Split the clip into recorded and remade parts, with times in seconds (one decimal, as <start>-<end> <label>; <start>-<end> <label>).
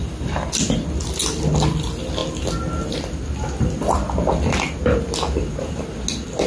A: 0.0-6.5 recorded